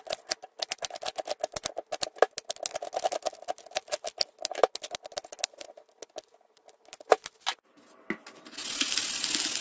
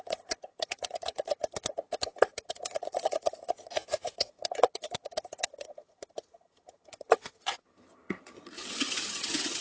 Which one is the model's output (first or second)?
second